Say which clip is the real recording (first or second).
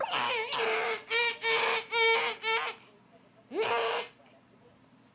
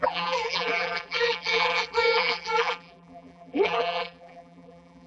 first